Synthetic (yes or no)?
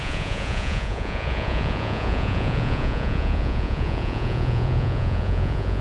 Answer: yes